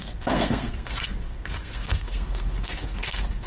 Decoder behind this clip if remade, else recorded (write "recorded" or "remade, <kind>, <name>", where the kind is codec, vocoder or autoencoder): remade, codec, SNAC